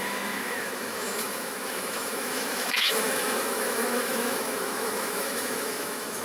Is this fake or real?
fake